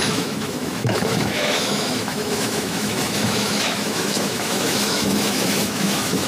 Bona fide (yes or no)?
no